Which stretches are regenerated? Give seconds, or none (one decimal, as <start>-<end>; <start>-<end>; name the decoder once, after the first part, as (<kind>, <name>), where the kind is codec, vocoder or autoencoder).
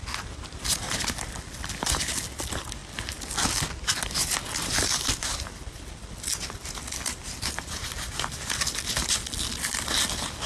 none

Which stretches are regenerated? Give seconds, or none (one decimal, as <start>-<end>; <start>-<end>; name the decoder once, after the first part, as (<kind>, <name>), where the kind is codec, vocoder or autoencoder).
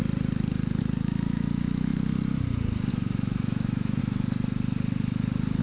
0.8-1.9 (autoencoder, DAC-VAE); 2.9-4.0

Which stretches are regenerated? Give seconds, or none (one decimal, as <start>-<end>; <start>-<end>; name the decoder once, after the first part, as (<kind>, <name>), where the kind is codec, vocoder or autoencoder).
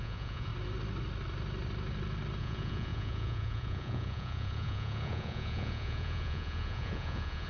0.0-0.5 (vocoder, Vocos); 2.4-7.5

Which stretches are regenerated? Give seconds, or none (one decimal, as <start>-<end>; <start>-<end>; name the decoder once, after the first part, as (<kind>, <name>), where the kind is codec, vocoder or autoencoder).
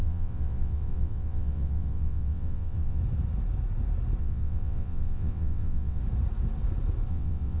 0.0-3.0 (vocoder, WaveNeXt); 4.2-6.0; 7.1-7.6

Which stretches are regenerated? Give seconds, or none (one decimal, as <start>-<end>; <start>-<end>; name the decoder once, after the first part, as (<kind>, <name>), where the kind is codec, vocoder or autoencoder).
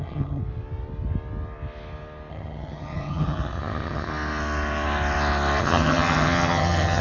0.0-0.4 (vocoder, HiFi-GAN); 2.3-4.1; 5.6-7.0